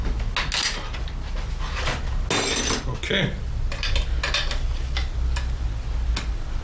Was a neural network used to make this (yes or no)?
no